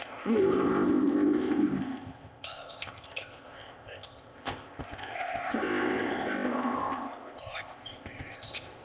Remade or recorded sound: remade